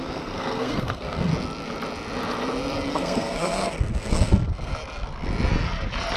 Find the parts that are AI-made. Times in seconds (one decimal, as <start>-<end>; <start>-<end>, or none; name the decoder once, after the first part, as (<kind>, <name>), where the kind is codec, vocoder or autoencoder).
0.0-1.3 (codec, SNAC); 2.9-4.7